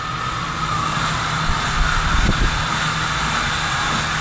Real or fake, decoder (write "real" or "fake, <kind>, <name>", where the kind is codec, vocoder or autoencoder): real